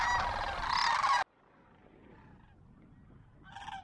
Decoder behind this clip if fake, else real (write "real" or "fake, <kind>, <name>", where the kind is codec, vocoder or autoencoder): real